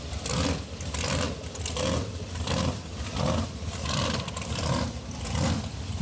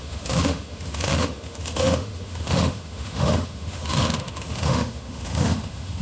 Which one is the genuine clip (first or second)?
first